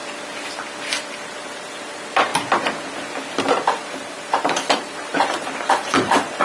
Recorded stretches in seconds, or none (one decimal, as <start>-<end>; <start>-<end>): 0.0-0.8; 2.3-3.4